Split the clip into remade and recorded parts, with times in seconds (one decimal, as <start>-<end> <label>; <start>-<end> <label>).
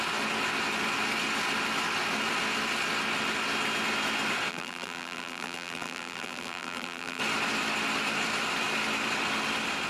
0.0-4.5 recorded; 4.5-7.2 remade; 7.2-9.9 recorded